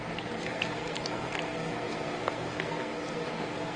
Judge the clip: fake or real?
fake